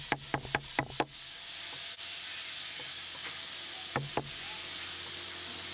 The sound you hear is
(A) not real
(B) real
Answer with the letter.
B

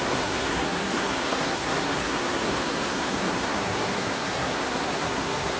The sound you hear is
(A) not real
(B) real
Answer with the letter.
A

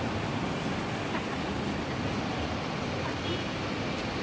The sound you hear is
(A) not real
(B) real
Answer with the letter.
B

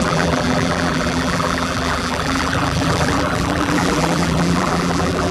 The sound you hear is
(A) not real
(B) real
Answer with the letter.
A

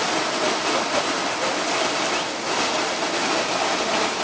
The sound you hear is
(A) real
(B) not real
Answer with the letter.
A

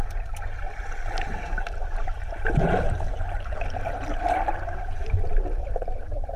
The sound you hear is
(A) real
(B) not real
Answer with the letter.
B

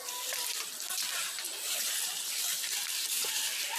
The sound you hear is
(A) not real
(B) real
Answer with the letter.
B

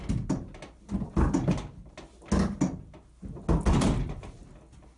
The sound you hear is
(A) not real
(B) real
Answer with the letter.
B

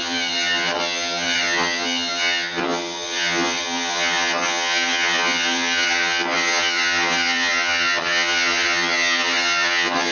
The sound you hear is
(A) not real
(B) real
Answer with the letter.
A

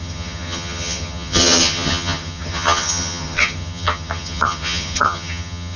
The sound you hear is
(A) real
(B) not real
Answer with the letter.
B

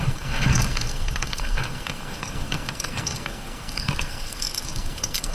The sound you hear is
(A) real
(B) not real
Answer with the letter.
B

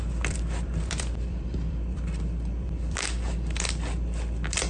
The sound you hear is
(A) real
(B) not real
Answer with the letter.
B